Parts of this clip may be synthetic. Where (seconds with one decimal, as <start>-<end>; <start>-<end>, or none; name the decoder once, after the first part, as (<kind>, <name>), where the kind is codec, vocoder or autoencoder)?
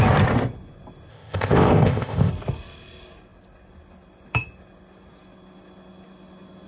1.1-2.3 (codec, ZipCodec)